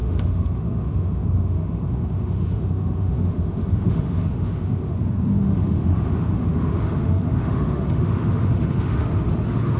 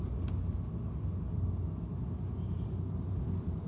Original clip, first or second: second